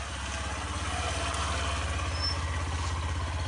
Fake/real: real